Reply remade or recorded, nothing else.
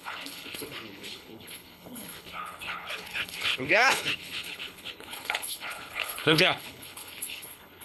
remade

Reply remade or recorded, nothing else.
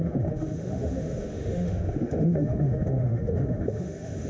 remade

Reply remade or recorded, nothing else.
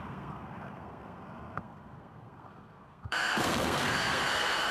remade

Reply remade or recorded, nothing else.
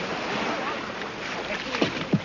recorded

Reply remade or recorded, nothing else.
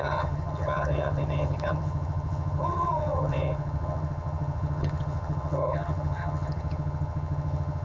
remade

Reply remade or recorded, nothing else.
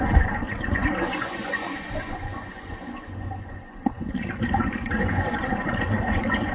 remade